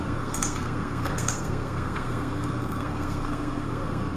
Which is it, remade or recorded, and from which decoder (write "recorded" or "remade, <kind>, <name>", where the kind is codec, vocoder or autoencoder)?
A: remade, codec, SNAC